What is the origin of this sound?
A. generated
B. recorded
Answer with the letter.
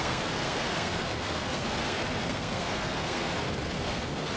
A